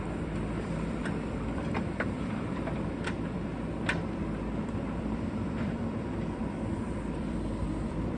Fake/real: fake